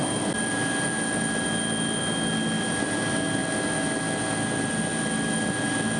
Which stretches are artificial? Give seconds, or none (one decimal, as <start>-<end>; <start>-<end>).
none